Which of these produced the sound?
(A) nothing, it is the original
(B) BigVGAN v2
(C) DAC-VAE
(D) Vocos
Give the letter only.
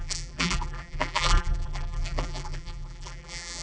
B